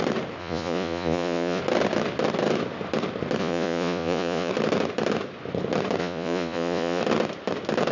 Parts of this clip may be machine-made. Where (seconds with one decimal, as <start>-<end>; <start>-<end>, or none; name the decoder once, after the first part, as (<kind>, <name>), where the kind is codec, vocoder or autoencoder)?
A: 0.4-1.6 (vocoder, Vocos); 3.4-4.5; 6.0-7.0